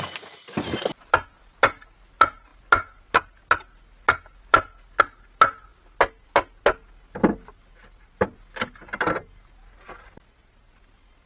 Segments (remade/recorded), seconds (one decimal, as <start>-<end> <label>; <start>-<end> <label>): 0.0-11.3 recorded